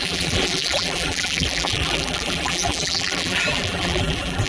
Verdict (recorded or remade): remade